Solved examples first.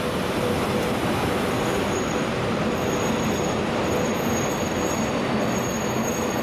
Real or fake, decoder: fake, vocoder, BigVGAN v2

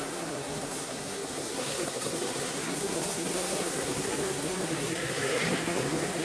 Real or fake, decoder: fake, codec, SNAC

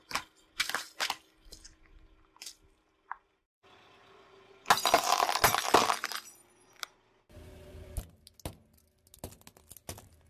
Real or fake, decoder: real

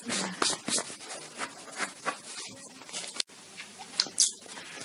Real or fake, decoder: real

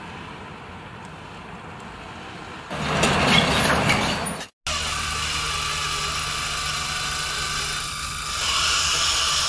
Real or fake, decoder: real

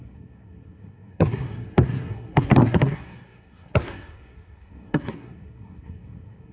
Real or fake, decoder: fake, codec, SNAC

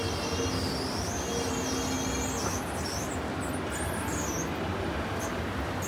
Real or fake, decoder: real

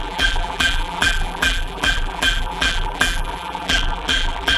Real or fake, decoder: fake, vocoder, BigVGAN v2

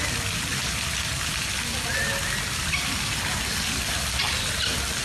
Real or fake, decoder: real